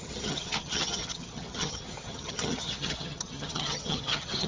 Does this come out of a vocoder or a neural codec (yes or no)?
yes